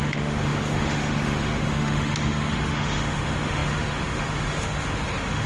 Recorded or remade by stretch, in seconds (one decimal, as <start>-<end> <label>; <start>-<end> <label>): 0.0-5.5 remade